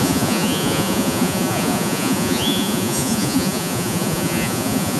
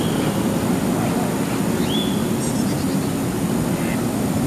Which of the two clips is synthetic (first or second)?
first